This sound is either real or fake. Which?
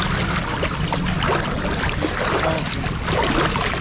real